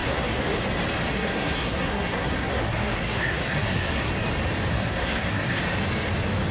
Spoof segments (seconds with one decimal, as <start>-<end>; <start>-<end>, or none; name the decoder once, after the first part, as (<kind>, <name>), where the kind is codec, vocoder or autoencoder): 0.0-0.6 (codec, SNAC); 1.1-4.1; 4.7-5.6

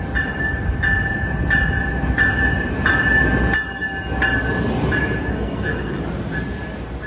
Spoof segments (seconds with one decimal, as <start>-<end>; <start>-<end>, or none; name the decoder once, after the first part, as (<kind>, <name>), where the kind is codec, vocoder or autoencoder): 5.3-6.0 (codec, SNAC)

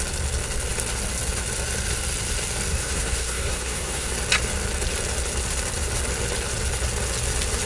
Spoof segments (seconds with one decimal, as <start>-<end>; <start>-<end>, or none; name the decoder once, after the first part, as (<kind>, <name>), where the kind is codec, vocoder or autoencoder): 2.7-4.1 (codec, SNAC)